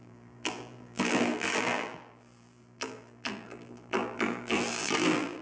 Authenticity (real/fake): fake